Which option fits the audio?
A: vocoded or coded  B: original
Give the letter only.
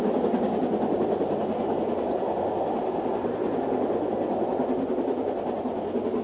B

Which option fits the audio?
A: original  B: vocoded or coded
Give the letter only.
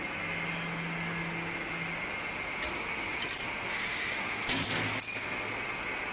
A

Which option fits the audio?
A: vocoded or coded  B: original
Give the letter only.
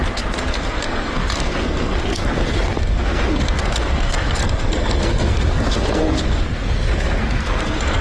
A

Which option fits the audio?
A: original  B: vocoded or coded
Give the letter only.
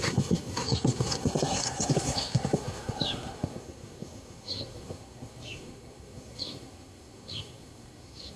B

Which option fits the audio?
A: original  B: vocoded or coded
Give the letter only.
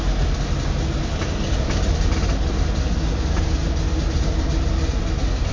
A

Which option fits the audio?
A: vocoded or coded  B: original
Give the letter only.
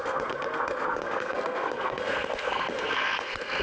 A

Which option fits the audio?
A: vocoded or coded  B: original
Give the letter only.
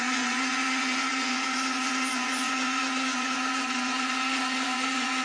A